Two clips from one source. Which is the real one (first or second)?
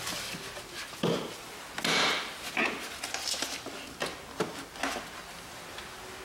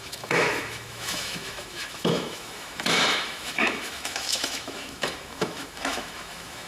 first